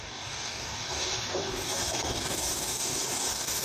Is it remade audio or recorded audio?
remade